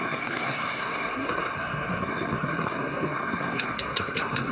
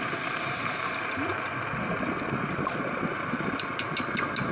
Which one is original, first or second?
second